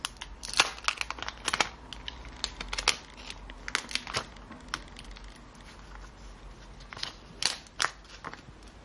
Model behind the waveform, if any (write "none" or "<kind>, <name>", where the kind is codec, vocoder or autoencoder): none